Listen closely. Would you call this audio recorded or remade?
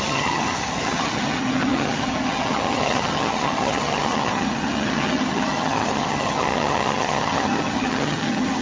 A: remade